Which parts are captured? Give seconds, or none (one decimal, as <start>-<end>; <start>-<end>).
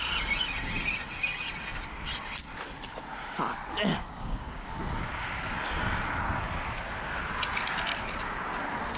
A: 0.0-3.9; 4.7-9.0